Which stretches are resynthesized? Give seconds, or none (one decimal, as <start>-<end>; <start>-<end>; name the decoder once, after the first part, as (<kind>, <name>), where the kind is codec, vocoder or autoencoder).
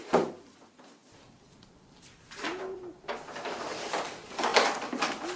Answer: 0.0-5.4 (vocoder, BigVGAN v2)